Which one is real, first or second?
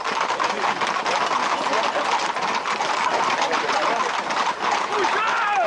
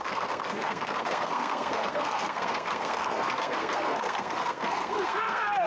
first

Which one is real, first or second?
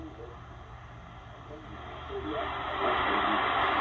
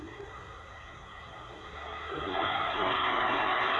first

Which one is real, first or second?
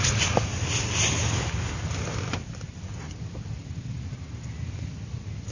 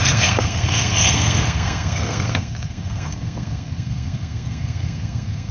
first